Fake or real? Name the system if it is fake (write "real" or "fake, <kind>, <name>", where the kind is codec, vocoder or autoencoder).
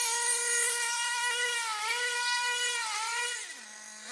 real